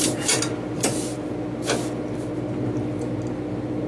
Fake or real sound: real